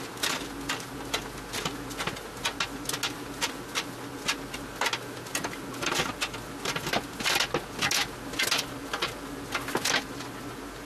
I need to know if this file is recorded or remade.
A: recorded